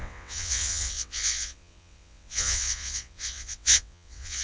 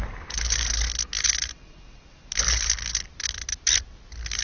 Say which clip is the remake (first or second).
first